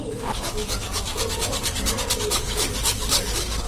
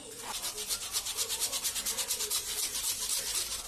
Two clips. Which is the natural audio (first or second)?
second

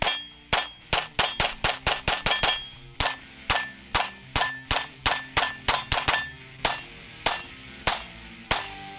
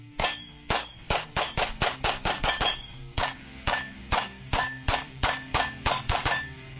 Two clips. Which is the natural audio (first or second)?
first